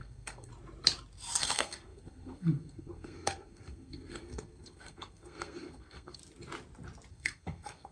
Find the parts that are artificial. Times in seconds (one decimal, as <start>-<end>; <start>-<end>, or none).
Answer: 0.0-0.5; 1.4-6.2; 7.1-7.9